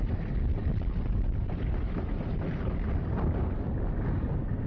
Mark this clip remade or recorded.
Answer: recorded